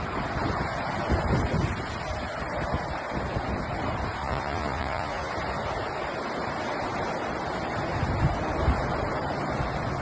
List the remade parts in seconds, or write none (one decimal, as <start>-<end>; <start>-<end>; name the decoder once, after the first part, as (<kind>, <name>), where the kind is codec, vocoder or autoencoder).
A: 4.2-5.3 (vocoder, Vocos)